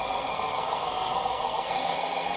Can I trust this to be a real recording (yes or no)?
no